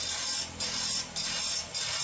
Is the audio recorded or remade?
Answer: recorded